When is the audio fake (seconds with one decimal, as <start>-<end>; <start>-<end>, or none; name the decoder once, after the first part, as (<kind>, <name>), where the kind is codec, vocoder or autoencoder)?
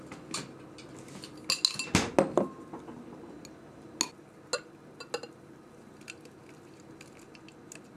none